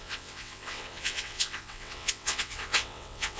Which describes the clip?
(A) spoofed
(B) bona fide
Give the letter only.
A